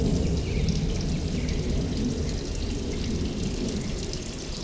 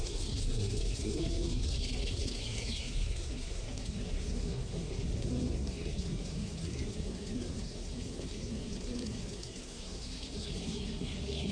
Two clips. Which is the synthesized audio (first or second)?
second